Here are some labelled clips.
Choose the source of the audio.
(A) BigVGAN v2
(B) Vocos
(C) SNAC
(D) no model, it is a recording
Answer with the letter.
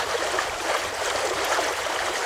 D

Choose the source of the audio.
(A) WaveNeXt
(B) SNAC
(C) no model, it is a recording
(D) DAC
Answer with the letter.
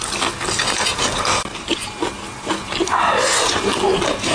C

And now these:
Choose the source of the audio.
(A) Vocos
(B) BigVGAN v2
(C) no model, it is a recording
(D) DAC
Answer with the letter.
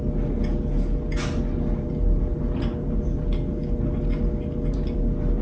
C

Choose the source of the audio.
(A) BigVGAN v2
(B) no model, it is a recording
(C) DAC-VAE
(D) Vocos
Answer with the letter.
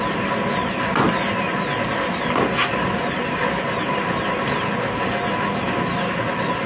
B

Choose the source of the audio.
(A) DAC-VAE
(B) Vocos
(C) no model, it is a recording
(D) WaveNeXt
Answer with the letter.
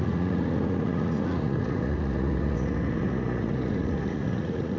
B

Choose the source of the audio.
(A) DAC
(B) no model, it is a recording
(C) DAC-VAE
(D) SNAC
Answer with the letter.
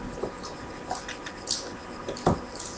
B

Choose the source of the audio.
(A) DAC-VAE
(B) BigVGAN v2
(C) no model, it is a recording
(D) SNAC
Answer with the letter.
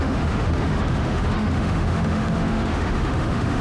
A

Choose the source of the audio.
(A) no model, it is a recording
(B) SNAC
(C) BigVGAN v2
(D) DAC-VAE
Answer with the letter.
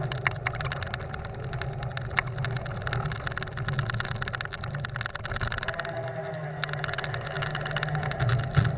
A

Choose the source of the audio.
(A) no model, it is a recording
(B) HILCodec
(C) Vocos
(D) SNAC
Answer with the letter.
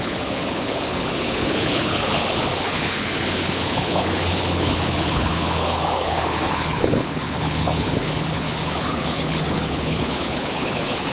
B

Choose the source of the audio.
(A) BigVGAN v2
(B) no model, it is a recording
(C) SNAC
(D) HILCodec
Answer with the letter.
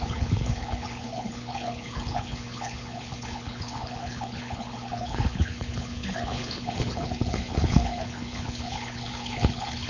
D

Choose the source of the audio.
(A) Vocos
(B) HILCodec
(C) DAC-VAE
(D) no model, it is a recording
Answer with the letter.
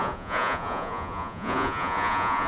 A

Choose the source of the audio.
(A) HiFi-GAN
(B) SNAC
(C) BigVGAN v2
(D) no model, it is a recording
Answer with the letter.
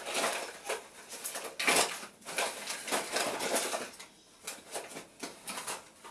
D